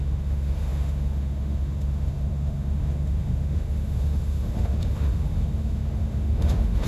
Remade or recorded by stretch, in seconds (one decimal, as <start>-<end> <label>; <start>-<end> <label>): 0.0-6.9 remade